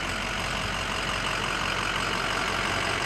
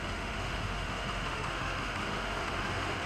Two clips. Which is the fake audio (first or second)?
second